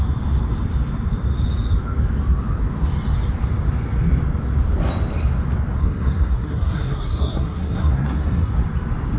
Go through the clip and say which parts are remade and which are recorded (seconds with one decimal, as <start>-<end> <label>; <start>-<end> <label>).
0.0-5.8 recorded; 5.8-8.5 remade; 8.5-9.2 recorded